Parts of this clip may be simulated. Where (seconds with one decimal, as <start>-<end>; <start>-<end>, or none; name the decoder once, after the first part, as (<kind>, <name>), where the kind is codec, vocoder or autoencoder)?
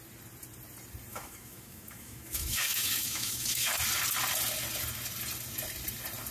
1.1-3.7 (autoencoder, DAC-VAE)